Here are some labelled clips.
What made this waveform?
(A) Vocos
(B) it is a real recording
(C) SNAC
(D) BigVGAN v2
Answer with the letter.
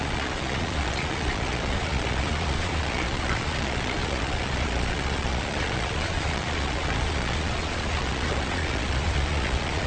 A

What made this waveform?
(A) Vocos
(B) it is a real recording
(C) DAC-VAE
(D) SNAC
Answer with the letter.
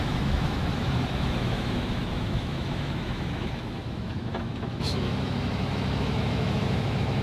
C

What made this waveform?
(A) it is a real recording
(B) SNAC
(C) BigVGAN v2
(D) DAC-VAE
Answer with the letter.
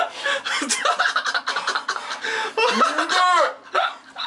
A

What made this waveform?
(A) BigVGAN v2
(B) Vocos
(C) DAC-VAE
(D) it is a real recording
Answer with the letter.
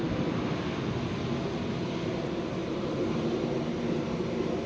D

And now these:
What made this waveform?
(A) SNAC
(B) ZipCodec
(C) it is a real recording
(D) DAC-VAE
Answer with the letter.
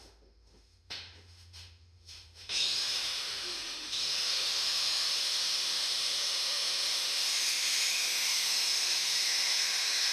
D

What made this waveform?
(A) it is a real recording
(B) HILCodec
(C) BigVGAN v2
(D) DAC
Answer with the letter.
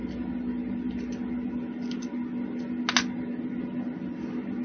A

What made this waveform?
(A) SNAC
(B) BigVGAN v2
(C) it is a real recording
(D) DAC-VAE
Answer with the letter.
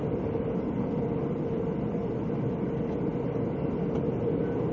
C